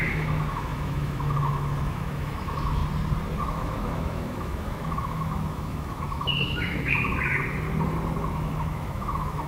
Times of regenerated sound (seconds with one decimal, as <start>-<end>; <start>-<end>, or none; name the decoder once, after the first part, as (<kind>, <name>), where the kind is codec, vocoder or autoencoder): 0.0-2.8 (autoencoder, DAC-VAE); 3.4-7.1; 8.2-9.5